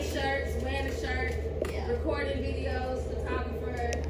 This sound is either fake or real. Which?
real